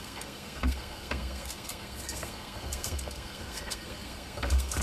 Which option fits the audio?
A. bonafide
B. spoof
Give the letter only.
B